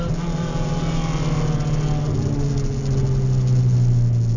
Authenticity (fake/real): real